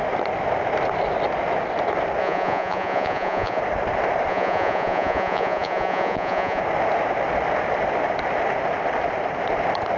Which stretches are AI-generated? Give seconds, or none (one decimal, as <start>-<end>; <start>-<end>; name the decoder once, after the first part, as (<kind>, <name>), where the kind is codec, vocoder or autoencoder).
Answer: 2.2-3.6 (vocoder, Vocos); 4.3-6.6